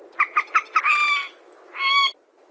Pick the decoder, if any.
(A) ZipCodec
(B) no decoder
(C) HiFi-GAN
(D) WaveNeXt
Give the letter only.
B